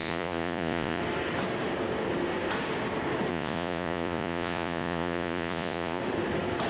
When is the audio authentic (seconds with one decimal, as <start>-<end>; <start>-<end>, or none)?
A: 1.0-3.3; 6.0-6.7